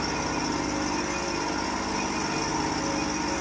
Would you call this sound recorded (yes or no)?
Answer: yes